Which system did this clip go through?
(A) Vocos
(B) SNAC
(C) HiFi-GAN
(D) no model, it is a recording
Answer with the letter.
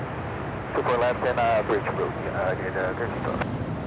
D